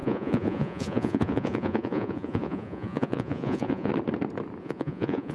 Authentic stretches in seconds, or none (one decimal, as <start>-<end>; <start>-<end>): 3.9-4.6